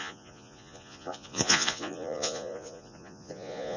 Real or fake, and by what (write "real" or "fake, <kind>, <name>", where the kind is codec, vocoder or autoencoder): fake, vocoder, Vocos